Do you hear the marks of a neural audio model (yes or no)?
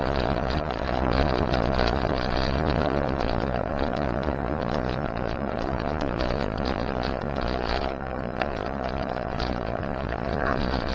yes